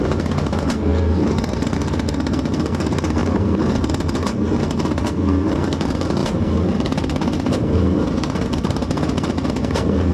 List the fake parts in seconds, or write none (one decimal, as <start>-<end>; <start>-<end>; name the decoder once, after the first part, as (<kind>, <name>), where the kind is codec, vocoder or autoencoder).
0.0-10.1 (codec, SNAC)

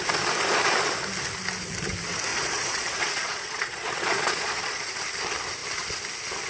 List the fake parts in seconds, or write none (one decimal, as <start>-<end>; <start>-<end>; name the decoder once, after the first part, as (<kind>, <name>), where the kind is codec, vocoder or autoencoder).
2.3-4.9 (vocoder, Vocos)